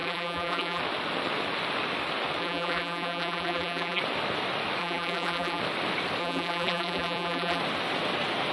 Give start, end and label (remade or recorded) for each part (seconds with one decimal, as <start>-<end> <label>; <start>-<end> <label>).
0.0-0.8 remade; 0.8-2.4 recorded; 2.4-4.0 remade; 4.0-4.8 recorded; 4.8-5.6 remade; 5.6-6.2 recorded; 6.2-7.6 remade; 7.6-8.5 recorded